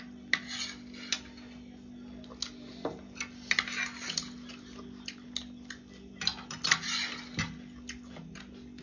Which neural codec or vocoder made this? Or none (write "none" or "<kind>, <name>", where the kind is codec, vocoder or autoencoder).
none